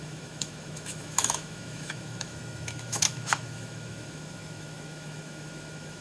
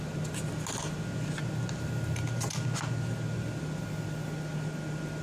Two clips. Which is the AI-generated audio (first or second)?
first